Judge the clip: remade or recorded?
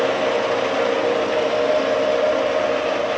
recorded